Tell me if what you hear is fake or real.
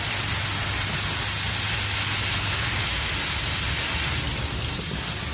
real